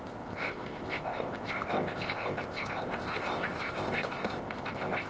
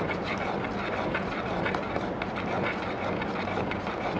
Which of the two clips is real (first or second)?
second